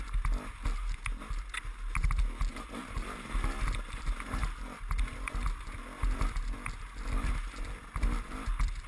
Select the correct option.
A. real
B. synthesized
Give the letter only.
A